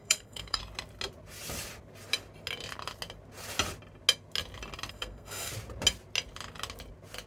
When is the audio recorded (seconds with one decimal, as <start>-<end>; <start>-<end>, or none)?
0.6-4.9; 5.5-7.3